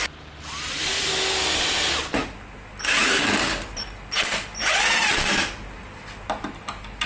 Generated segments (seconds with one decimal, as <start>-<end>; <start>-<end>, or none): none

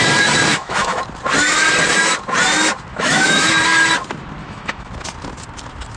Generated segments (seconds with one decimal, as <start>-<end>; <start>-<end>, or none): 0.5-1.0; 2.9-3.5; 4.4-4.9